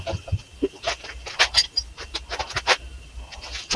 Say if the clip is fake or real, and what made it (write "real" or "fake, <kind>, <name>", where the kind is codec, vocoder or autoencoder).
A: real